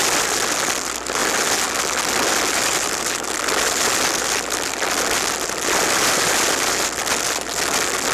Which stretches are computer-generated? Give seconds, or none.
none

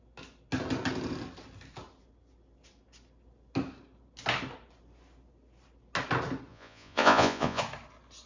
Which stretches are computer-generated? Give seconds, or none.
6.5-7.6 (vocoder, Vocos)

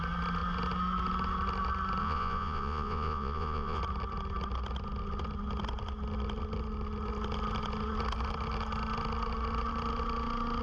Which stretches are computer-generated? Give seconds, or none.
2.0-3.8 (vocoder, Vocos)